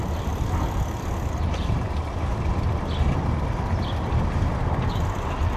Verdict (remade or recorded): recorded